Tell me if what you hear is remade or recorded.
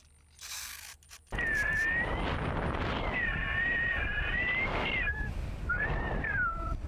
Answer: recorded